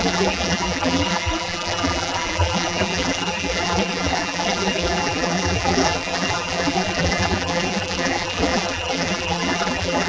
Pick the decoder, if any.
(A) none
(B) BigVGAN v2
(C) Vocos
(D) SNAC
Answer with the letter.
B